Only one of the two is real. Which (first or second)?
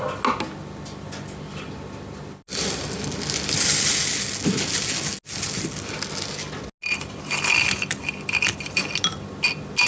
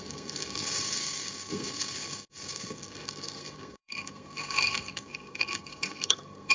first